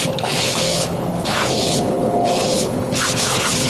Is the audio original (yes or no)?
no